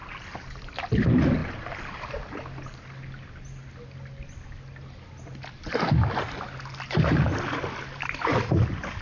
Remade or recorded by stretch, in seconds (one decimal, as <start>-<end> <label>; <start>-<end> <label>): 0.0-9.0 recorded